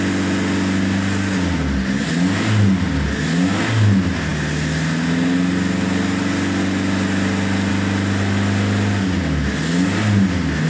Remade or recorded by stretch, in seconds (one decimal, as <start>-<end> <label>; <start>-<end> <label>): 0.0-10.7 recorded

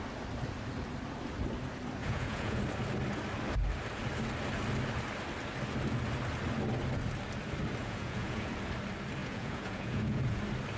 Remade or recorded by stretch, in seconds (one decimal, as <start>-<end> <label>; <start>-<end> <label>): 0.0-2.0 recorded; 2.0-2.6 remade; 2.6-7.8 recorded; 7.8-8.5 remade; 8.5-9.2 recorded; 9.2-10.4 remade; 10.4-10.8 recorded